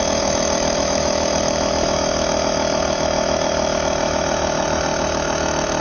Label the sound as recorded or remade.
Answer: remade